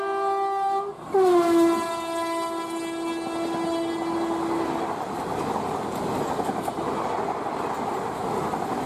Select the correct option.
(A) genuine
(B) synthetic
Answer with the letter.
A